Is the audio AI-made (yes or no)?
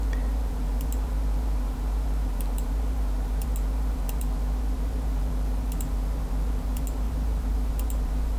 yes